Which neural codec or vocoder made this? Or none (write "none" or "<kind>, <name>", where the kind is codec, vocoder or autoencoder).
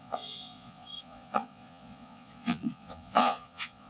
vocoder, Vocos